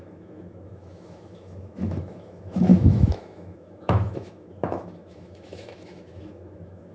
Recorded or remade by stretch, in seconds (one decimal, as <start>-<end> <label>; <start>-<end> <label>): 0.0-6.9 remade